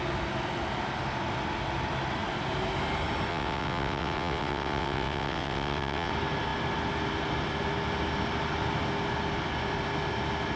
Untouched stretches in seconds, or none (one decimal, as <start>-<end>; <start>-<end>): 0.0-3.3; 6.1-10.6